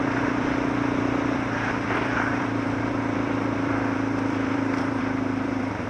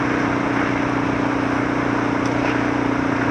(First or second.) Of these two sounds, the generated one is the first